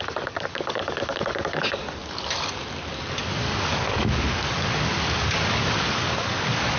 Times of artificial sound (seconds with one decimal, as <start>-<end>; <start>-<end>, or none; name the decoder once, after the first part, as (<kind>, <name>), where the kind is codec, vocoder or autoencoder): 0.0-1.8 (codec, DAC); 2.9-6.8